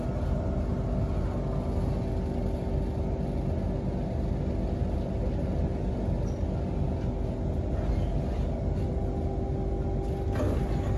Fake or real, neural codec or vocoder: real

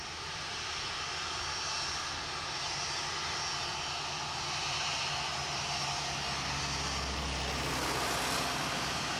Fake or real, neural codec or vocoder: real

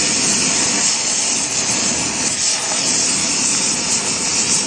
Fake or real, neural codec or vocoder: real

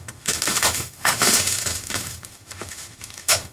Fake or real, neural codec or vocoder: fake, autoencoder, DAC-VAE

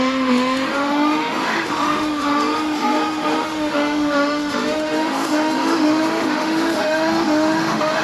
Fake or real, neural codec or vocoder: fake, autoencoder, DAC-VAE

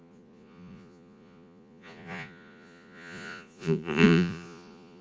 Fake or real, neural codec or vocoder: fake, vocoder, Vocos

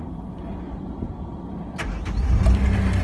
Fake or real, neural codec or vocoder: real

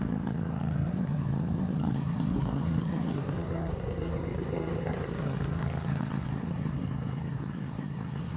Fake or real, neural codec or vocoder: fake, codec, SNAC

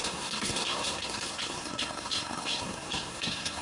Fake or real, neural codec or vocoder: fake, codec, SNAC